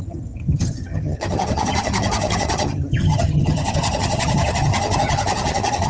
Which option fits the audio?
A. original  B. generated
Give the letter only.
B